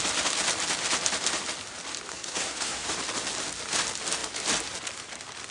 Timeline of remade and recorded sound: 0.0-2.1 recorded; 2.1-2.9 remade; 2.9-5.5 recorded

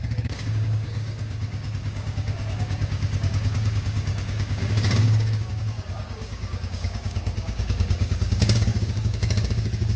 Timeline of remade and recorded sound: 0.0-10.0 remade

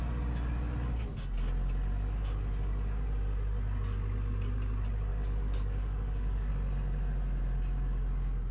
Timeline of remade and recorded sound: 0.0-5.1 recorded; 5.1-6.5 remade; 6.5-8.5 recorded